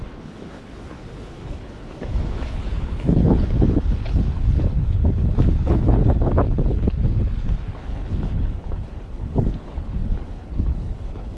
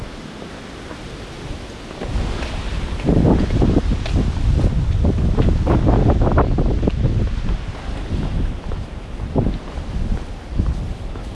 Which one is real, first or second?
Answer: second